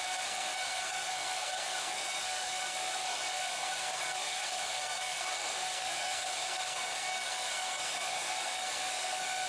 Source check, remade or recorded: remade